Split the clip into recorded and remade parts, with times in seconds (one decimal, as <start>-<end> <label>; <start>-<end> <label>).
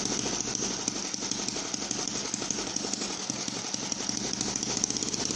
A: 0.0-2.2 recorded; 2.2-3.6 remade; 3.6-5.4 recorded